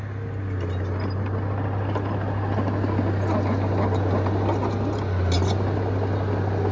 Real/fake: real